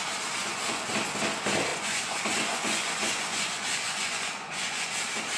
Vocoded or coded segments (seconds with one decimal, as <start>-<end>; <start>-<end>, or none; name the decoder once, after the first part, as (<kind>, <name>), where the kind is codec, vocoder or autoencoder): 0.4-0.9 (vocoder, Vocos); 1.7-4.9